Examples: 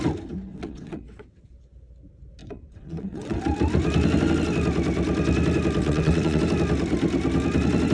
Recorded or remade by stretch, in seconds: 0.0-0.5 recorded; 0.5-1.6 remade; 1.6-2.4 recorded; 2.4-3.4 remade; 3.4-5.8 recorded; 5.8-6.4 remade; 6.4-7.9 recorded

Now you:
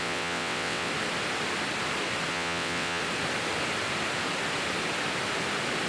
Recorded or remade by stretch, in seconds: 0.0-0.9 remade; 0.9-2.3 recorded; 2.3-3.0 remade; 3.0-5.9 recorded

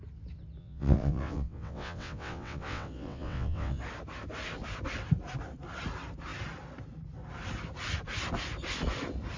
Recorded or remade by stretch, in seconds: 0.0-0.6 recorded; 0.6-3.8 remade; 3.8-9.4 recorded

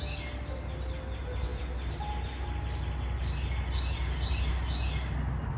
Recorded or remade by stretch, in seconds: 0.0-5.6 recorded

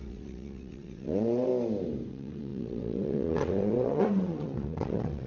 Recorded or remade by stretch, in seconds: 0.0-1.5 remade; 1.5-2.1 recorded; 2.1-5.3 remade

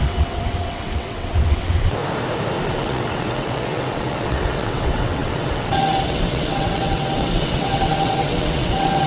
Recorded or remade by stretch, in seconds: 0.0-2.0 remade; 2.0-2.7 recorded; 2.7-9.1 remade